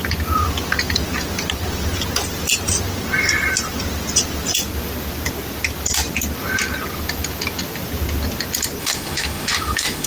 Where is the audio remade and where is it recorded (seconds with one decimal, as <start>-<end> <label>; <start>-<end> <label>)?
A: 0.0-8.8 recorded; 8.8-10.1 remade